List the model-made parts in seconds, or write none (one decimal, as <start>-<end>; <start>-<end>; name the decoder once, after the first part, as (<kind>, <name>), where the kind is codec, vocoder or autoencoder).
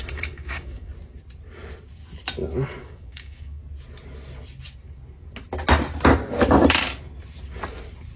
0.0-0.9 (codec, DAC); 2.8-3.6